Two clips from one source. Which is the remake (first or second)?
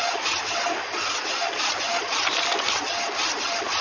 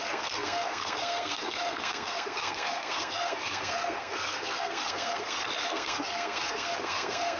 second